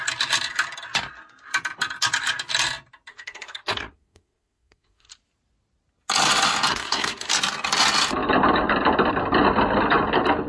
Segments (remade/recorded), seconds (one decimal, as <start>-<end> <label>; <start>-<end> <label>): 0.0-3.1 recorded; 3.1-5.1 remade; 5.1-6.7 recorded; 6.7-7.3 remade; 7.3-10.5 recorded